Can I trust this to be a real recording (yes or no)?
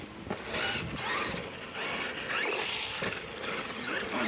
yes